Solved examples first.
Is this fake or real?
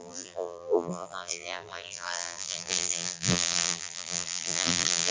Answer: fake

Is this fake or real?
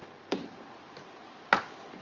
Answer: real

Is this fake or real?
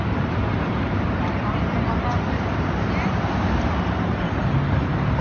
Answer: fake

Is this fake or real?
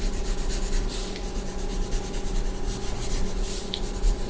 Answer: real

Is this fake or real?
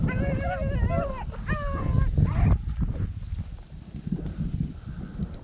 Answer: real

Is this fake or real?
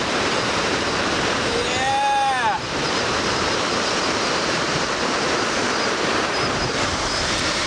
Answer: fake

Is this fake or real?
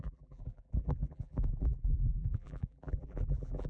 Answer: fake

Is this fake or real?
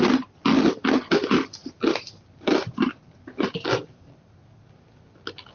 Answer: real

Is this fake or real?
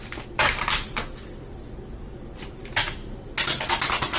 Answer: real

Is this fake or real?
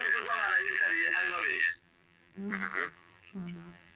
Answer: fake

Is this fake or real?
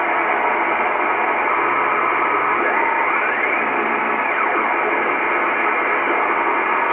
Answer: real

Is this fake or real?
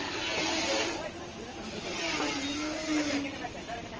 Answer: real